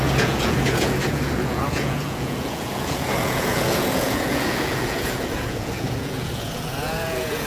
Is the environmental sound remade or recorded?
remade